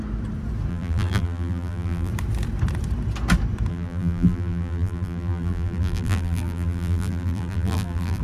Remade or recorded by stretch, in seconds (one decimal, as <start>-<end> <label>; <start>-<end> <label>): 0.0-0.7 recorded; 0.7-2.1 remade; 2.1-3.7 recorded; 3.7-8.2 remade

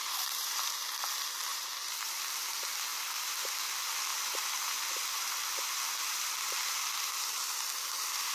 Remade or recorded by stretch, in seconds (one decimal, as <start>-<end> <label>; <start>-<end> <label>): 0.0-1.0 remade; 1.0-1.5 recorded; 1.5-2.2 remade; 2.2-2.9 recorded; 2.9-3.5 remade; 3.5-4.1 recorded; 4.1-6.3 remade; 6.3-8.3 recorded

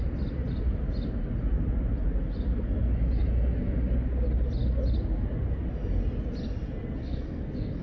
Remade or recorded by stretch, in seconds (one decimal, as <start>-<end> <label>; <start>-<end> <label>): 0.0-7.0 recorded; 7.0-7.8 remade

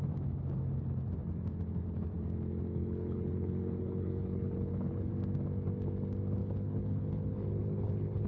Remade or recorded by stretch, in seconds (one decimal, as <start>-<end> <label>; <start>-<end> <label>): 0.0-2.8 recorded; 2.8-5.1 remade; 5.1-6.4 recorded; 6.4-8.3 remade